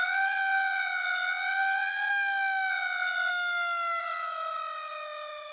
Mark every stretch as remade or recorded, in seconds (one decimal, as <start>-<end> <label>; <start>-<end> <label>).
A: 0.0-2.1 remade; 2.1-2.7 recorded; 2.7-3.3 remade; 3.3-4.0 recorded; 4.0-5.5 remade